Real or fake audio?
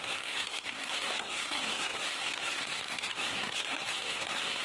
fake